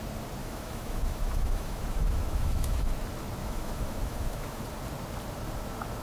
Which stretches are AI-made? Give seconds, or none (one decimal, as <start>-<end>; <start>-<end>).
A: 0.4-2.9; 3.4-4.6